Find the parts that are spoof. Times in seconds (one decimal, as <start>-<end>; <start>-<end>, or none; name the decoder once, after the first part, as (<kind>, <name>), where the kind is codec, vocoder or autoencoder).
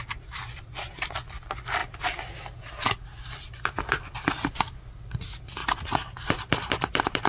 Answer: 0.0-1.8 (vocoder, BigVGAN v2); 3.4-5.6; 6.7-7.3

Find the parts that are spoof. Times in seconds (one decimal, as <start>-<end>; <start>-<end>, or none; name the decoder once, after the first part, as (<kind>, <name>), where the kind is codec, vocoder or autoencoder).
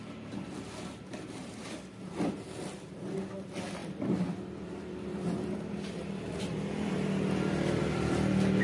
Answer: none